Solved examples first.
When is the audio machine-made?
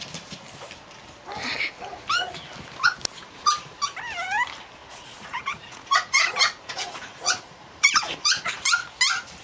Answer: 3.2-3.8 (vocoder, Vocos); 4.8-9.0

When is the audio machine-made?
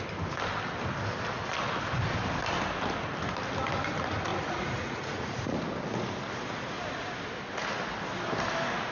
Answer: 4.3-5.6 (vocoder, Vocos)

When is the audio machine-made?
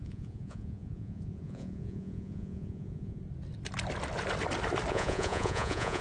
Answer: 0.0-3.2 (vocoder, Vocos); 4.9-6.0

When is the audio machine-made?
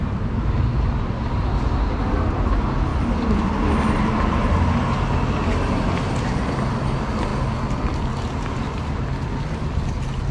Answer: none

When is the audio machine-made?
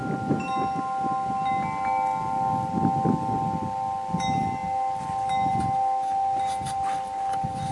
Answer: none